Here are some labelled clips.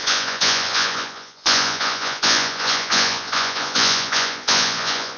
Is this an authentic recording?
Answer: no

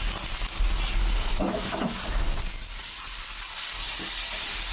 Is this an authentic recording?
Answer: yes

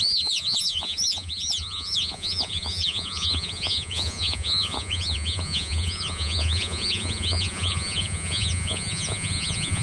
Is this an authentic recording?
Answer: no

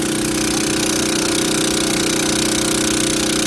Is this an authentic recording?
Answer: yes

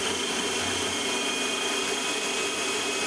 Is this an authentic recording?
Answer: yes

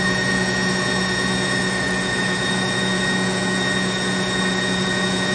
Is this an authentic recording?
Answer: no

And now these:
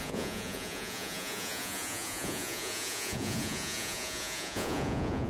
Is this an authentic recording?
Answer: no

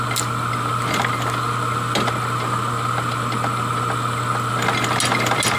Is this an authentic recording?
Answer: yes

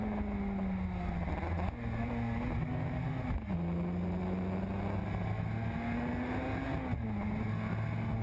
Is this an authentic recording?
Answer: yes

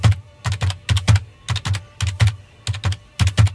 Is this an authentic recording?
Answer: yes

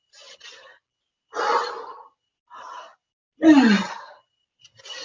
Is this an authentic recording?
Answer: yes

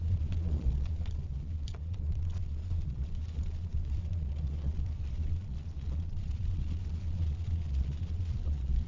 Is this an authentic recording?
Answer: no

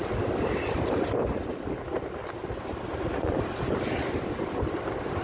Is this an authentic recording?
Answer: yes